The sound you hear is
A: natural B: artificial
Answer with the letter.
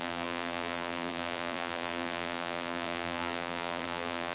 B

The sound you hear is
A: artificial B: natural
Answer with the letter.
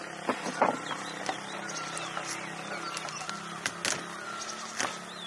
B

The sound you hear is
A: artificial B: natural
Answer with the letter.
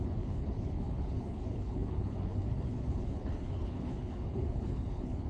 A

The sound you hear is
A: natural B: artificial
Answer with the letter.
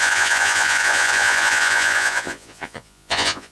B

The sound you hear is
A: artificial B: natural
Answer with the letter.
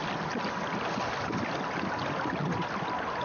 B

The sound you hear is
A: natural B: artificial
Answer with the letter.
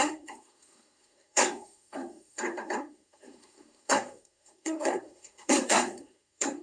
B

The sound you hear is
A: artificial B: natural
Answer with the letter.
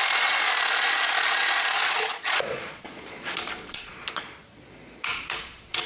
A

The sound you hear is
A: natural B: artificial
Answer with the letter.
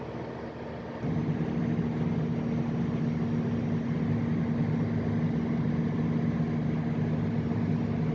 A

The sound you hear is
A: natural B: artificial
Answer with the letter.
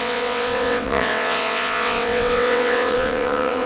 B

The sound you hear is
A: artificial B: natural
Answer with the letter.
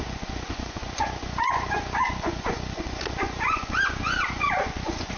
A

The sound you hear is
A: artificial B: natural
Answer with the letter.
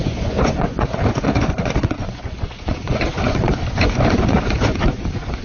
A